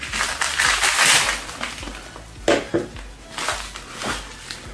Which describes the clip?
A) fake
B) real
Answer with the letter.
B